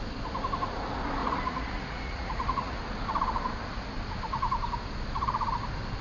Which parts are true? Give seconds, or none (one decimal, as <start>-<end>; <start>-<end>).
0.0-1.2; 2.8-6.0